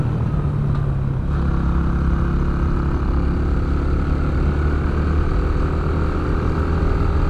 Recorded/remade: recorded